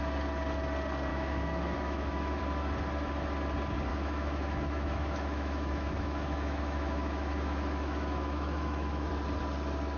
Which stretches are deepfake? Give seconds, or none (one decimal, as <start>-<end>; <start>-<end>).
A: 1.1-2.4; 3.9-9.1